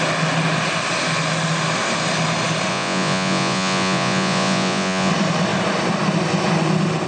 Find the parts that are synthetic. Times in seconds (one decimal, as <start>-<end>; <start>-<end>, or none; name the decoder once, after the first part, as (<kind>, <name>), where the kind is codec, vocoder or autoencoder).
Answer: 2.7-5.1 (vocoder, Vocos)